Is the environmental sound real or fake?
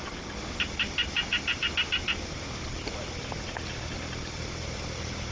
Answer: real